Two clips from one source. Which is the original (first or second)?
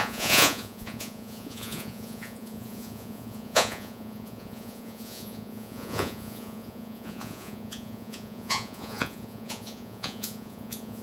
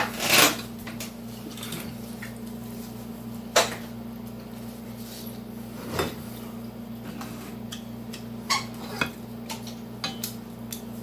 second